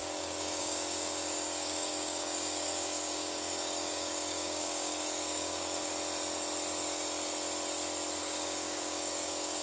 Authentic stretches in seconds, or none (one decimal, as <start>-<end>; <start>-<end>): 5.9-8.2